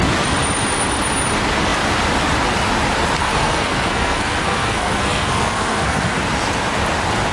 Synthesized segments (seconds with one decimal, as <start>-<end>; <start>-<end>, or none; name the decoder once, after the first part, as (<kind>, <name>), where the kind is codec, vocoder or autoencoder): 3.2-6.2 (codec, SNAC)